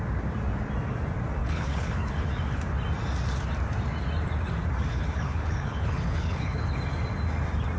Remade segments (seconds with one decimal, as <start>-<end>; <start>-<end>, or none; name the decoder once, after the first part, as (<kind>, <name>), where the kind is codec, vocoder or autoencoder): 1.4-2.3 (codec, HILCodec); 4.9-6.7